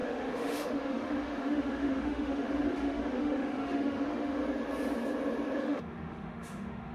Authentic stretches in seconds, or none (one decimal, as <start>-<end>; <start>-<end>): 4.4-5.6